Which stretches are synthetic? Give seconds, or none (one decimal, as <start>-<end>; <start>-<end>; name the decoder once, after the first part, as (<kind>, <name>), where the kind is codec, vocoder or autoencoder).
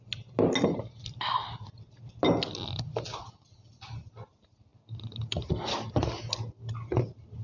none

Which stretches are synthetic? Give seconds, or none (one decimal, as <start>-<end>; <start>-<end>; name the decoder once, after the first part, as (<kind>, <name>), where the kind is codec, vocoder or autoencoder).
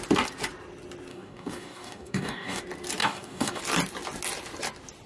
1.1-2.6 (codec, DAC); 3.0-3.6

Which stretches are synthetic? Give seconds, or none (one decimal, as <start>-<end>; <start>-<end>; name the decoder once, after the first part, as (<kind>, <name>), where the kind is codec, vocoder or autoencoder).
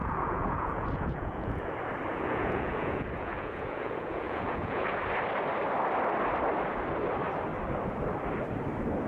0.0-1.7 (vocoder, Vocos); 2.1-5.0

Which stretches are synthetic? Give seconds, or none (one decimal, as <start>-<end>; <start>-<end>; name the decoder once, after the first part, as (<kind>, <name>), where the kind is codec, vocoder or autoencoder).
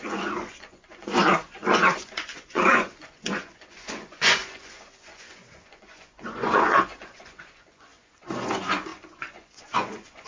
0.0-10.3 (vocoder, Vocos)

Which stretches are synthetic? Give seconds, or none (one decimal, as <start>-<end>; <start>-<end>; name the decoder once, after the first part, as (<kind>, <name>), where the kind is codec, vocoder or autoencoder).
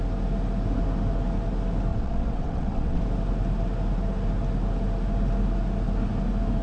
1.9-3.0 (vocoder, WaveNeXt)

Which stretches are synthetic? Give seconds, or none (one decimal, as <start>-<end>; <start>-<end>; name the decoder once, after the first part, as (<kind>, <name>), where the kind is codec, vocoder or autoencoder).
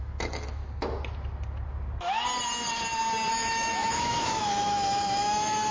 0.0-0.6 (autoencoder, DAC-VAE); 3.3-5.7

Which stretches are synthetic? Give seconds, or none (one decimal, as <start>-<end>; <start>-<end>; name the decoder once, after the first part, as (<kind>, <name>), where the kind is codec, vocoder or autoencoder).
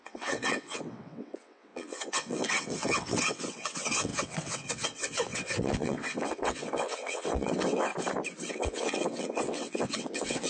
0.0-7.9 (vocoder, WaveNeXt); 8.5-10.5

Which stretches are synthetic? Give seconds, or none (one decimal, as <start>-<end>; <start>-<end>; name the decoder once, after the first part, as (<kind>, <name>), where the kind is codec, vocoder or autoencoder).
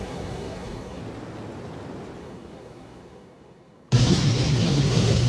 0.0-1.0 (codec, SNAC); 2.2-5.3